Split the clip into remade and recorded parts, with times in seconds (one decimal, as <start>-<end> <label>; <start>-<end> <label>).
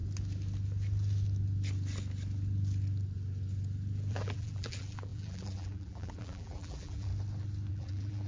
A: 0.0-4.1 recorded; 4.1-7.1 remade; 7.1-7.7 recorded; 7.7-8.3 remade